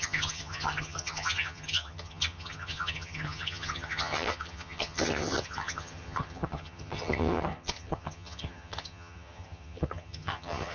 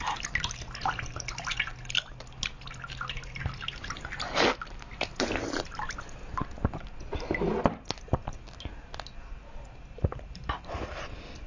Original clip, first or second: second